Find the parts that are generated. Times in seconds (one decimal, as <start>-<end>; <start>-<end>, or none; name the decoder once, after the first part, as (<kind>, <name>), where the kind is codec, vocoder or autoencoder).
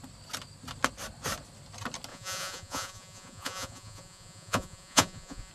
2.1-5.5 (vocoder, Vocos)